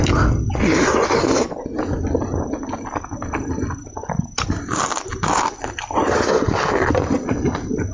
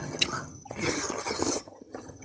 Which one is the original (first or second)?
first